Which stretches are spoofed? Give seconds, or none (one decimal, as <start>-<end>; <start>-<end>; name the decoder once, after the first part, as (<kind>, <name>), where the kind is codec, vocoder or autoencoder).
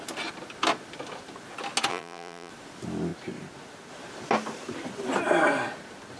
1.9-2.5 (vocoder, BigVGAN v2)